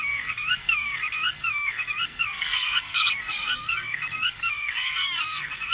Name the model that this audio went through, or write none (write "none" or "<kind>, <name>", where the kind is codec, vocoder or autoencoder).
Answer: codec, SNAC